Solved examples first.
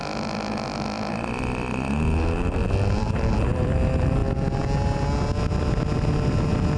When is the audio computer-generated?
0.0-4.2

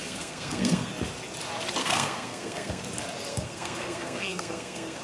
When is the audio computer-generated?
0.0-0.9; 1.8-2.8; 3.3-5.0